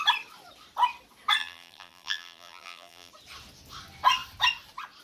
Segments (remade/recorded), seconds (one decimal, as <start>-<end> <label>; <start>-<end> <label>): 0.0-1.4 recorded; 1.4-3.1 remade; 3.1-5.0 recorded